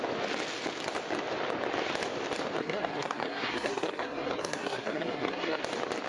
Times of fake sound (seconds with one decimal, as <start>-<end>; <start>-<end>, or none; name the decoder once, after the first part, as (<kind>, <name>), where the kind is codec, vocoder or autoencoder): 2.6-5.6 (codec, SNAC)